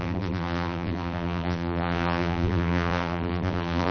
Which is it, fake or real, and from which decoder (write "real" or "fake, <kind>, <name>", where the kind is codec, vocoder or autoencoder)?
fake, vocoder, BigVGAN v2